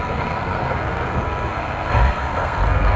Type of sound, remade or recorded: remade